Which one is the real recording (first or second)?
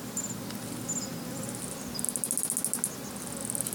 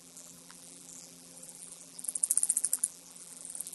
first